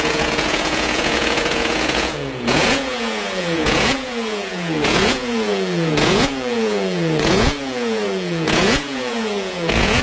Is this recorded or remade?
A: remade